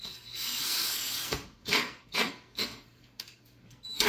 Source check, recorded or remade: remade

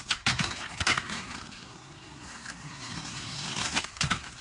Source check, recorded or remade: remade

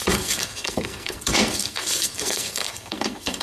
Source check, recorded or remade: remade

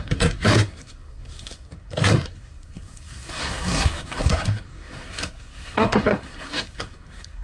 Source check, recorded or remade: remade